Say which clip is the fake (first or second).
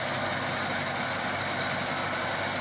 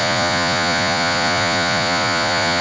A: second